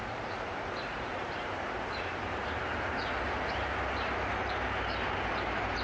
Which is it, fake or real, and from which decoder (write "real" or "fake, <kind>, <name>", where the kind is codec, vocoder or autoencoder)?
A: fake, vocoder, BigVGAN v2